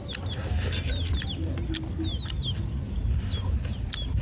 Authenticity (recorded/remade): recorded